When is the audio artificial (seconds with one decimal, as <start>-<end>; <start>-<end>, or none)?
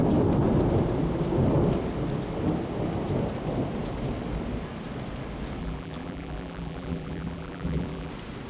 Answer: 5.6-8.1